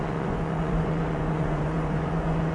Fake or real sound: fake